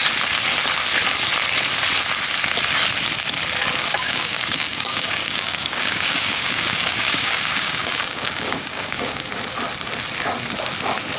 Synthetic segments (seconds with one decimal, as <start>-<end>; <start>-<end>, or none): 3.8-9.3